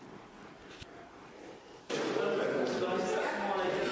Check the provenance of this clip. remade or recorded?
recorded